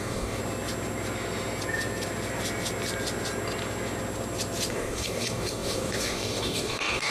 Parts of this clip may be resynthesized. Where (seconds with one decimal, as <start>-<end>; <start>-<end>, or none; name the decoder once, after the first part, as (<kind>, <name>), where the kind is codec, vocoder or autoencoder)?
0.0-0.4 (codec, DAC); 4.7-7.1